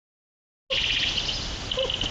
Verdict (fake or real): real